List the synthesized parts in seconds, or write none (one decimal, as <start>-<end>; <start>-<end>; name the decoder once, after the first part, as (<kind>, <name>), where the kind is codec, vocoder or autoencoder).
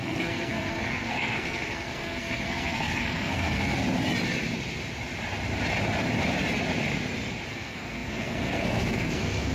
0.0-3.8 (codec, SNAC); 7.5-9.5